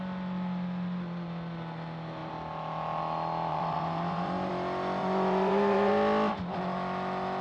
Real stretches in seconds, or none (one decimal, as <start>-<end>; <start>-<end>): 0.0-3.5; 4.5-5.0; 5.9-7.4